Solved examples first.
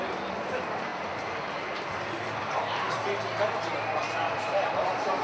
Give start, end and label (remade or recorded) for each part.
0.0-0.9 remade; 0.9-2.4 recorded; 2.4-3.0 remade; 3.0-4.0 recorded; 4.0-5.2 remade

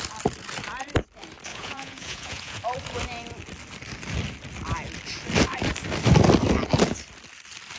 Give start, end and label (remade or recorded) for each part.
0.0-1.5 recorded; 1.5-2.6 remade; 2.6-7.8 recorded

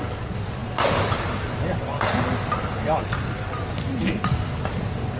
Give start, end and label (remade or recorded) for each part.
0.0-5.2 recorded